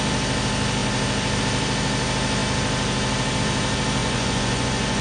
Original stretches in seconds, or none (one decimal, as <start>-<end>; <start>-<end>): 0.0-4.0